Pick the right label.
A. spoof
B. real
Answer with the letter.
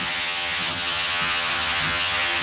A